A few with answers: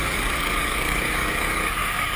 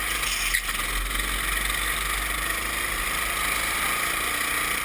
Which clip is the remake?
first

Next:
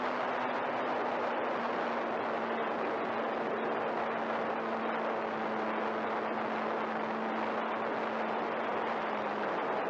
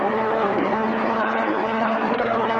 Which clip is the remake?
second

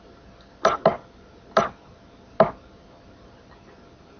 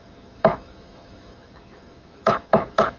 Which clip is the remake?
second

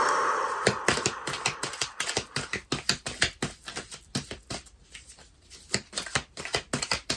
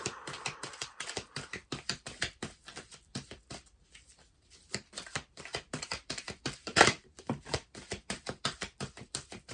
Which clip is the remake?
second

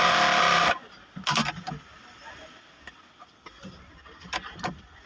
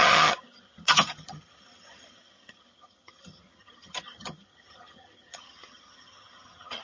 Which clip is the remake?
second